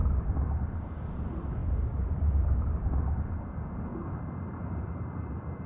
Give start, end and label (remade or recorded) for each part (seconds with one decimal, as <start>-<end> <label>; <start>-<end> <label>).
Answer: 0.0-5.7 remade